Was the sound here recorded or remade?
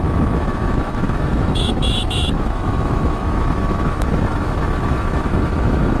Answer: remade